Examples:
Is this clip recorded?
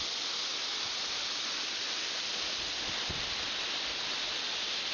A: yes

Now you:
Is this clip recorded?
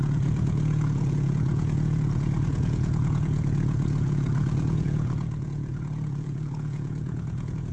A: no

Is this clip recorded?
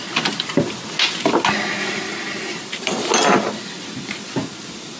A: yes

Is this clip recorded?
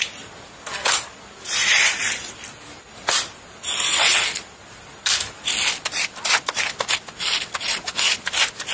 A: yes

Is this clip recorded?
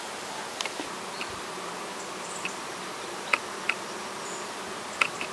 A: yes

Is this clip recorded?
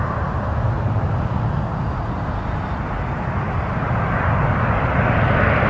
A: yes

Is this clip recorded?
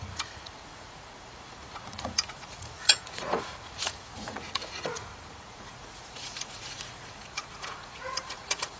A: no